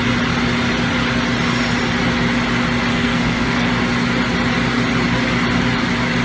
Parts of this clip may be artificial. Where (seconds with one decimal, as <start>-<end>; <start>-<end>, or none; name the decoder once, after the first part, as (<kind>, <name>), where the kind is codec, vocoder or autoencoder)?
2.9-3.7 (codec, SNAC)